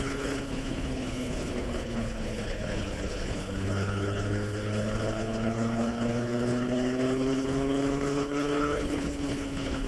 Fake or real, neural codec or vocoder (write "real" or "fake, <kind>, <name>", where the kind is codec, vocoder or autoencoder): fake, codec, HILCodec